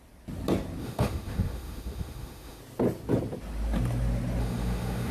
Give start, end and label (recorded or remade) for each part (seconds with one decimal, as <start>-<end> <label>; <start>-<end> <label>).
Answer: 0.0-0.8 recorded; 0.8-2.6 remade; 2.6-4.4 recorded; 4.4-5.1 remade